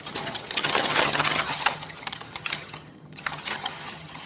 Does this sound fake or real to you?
fake